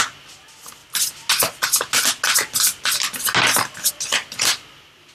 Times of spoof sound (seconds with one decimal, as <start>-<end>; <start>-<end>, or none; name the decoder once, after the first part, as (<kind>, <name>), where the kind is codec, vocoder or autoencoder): none